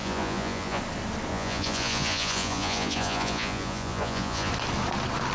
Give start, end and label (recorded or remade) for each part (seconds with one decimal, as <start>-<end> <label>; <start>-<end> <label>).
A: 0.0-0.8 remade; 0.8-1.3 recorded; 1.3-4.5 remade; 4.5-5.3 recorded